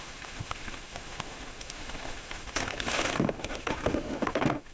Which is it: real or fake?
fake